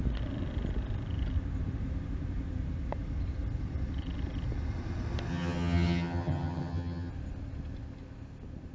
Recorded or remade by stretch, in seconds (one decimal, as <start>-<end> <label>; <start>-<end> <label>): 0.0-5.3 recorded; 5.3-7.1 remade; 7.1-8.7 recorded